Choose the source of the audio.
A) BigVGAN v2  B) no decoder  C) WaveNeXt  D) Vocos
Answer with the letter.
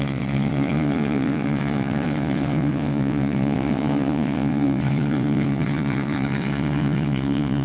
C